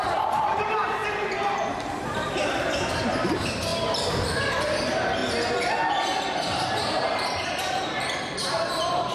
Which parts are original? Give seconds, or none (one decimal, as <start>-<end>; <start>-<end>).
1.0-2.0; 5.2-6.6